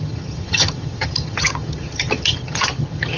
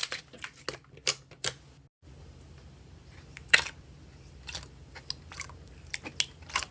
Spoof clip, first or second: first